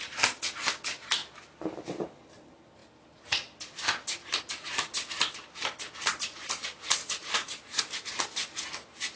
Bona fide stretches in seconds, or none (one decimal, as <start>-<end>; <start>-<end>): 0.0-7.0; 7.8-9.2